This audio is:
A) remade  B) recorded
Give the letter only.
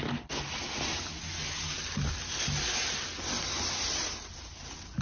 B